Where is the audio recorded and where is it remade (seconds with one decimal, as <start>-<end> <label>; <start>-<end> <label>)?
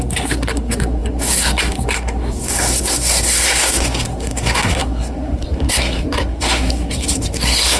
0.0-7.8 remade